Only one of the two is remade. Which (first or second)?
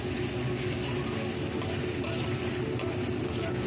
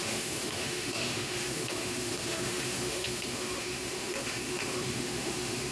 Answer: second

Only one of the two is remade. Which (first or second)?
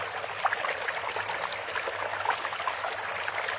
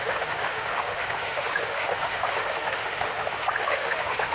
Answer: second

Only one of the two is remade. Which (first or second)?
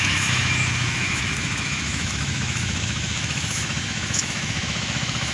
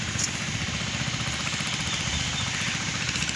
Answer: first